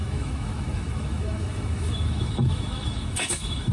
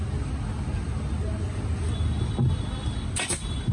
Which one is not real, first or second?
first